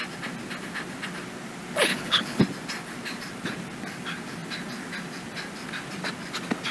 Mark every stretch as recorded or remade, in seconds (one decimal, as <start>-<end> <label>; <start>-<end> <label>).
0.0-1.9 recorded; 1.9-2.4 remade; 2.4-6.7 recorded